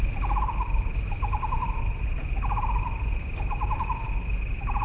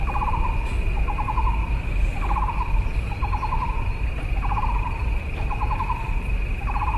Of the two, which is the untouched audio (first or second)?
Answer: first